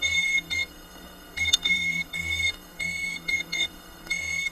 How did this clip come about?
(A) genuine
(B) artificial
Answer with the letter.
B